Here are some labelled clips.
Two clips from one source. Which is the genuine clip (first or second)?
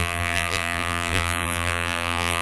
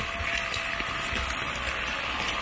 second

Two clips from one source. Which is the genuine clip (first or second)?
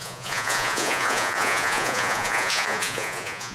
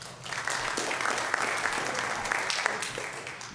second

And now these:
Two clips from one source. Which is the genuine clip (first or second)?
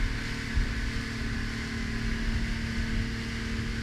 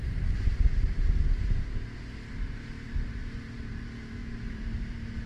first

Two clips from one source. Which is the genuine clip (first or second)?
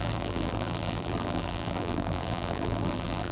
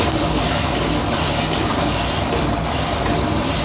second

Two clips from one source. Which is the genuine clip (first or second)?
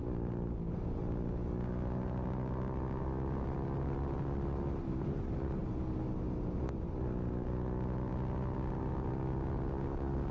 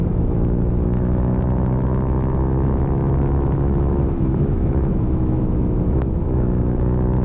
first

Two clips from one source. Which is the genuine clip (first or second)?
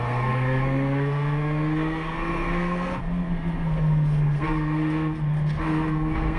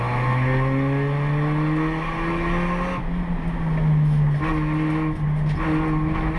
second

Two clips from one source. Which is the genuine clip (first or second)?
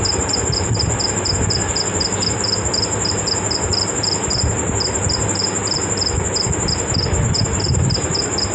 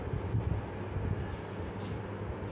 second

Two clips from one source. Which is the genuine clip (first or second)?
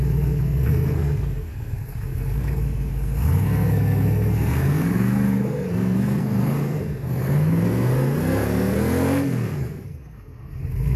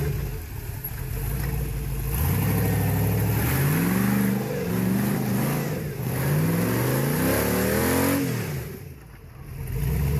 second